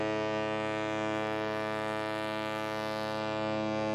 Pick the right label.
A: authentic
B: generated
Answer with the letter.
A